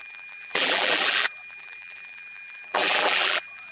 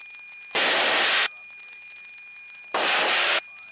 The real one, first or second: second